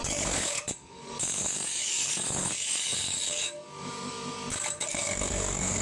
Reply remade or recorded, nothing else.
remade